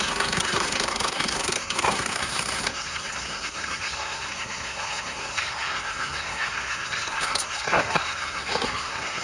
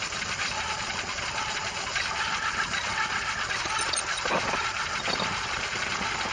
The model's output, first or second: first